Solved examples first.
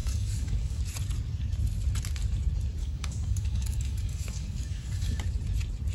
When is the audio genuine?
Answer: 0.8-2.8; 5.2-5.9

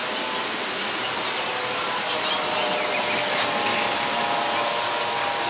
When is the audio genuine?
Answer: 0.0-5.5

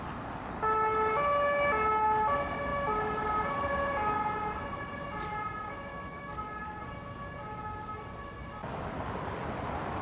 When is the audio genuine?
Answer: 0.0-5.9; 6.8-10.0